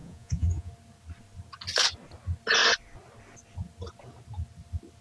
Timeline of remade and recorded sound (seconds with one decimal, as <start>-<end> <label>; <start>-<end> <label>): 0.0-0.7 remade; 0.7-5.0 recorded